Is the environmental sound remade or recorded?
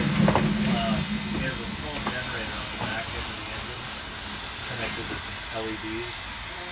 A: recorded